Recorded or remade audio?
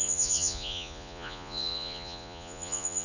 remade